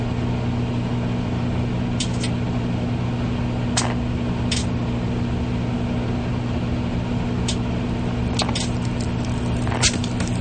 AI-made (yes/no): no